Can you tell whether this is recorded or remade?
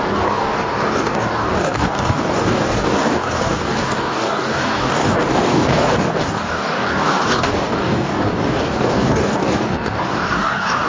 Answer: remade